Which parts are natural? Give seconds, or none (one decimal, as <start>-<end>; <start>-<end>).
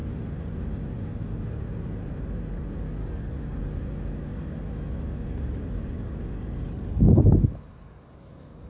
0.0-3.0; 3.6-8.7